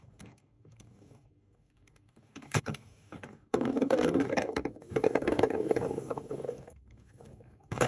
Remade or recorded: remade